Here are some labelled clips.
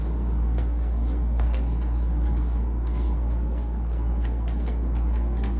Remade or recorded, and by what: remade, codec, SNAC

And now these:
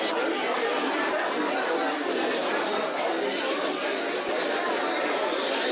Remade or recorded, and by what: recorded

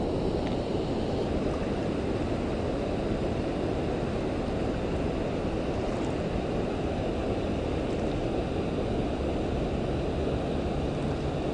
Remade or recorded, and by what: recorded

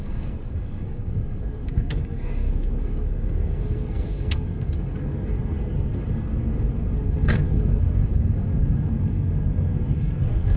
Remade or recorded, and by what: remade, codec, SNAC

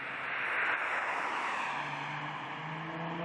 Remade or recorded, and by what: recorded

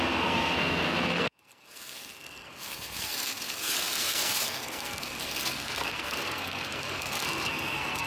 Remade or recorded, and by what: remade, codec, SNAC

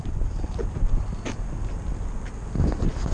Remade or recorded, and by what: recorded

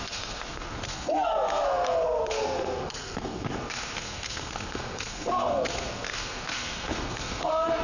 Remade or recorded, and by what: remade, codec, SNAC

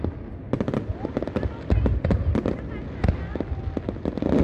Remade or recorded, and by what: recorded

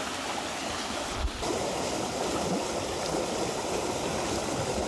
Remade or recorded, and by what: recorded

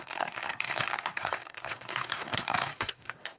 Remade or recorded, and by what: remade, codec, SNAC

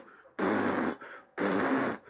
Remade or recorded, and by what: recorded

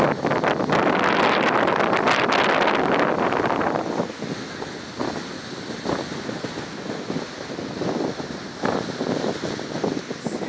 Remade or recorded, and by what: recorded